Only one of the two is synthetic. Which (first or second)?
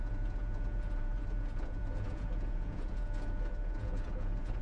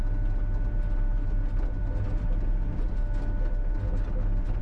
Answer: first